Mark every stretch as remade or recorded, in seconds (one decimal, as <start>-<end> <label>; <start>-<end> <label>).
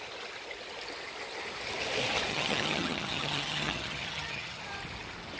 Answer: 0.0-2.3 recorded; 2.3-4.6 remade; 4.6-5.4 recorded